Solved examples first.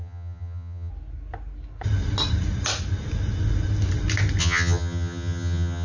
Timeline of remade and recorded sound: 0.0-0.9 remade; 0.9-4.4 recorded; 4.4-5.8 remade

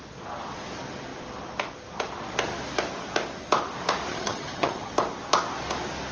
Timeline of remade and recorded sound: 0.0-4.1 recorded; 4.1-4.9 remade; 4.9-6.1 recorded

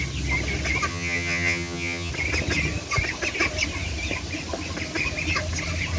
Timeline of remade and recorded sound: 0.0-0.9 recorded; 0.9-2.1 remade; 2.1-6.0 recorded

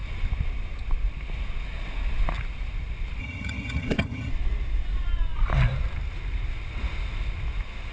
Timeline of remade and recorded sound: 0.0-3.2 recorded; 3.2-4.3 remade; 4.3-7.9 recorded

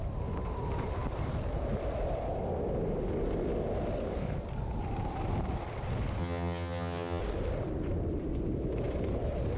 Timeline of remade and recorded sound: 0.0-6.2 recorded; 6.2-7.2 remade; 7.2-9.6 recorded